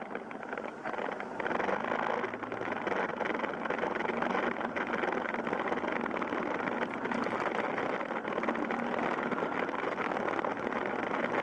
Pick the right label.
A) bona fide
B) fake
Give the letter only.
A